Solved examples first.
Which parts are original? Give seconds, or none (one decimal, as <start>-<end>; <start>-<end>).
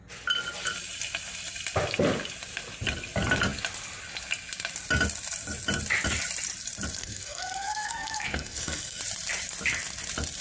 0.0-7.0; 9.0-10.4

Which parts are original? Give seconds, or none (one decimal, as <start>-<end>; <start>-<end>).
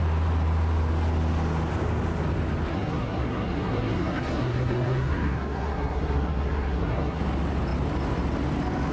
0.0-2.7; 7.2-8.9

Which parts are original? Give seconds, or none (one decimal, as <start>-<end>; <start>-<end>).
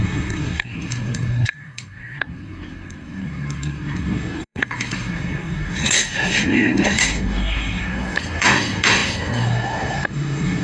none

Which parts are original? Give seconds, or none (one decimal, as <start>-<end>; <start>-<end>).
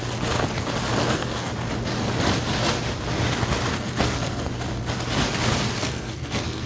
0.0-1.0; 1.5-3.7; 4.5-5.8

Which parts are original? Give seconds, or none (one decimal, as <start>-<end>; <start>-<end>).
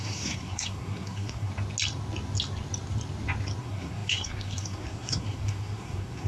1.5-3.6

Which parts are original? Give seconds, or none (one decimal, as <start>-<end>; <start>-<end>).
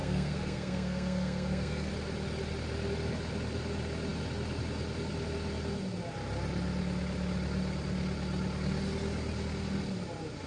1.9-10.5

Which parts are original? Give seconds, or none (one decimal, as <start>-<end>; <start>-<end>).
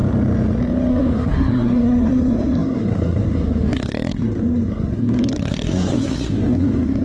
0.0-0.9